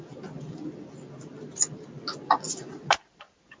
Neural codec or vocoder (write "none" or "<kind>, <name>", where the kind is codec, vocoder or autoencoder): none